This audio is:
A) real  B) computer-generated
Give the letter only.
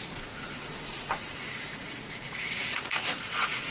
B